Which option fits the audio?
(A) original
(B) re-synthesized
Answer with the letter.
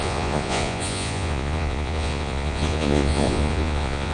B